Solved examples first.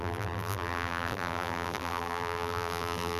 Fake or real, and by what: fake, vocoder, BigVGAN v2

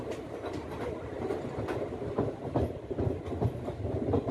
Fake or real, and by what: real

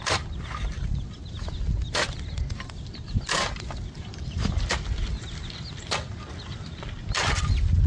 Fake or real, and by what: real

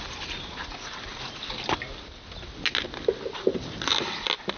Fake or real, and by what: real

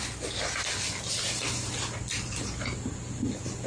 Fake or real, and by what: real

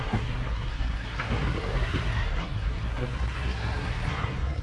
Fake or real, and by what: fake, codec, SNAC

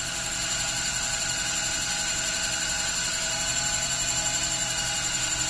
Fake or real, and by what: real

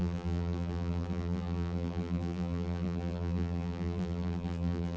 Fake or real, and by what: fake, vocoder, BigVGAN v2